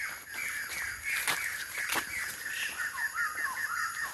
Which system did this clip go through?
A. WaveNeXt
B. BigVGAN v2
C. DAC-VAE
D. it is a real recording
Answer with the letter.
D